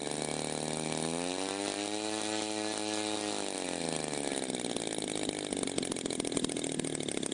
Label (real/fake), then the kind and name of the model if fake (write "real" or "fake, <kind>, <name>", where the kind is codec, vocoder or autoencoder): real